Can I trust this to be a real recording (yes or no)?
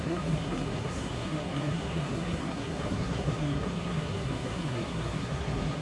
no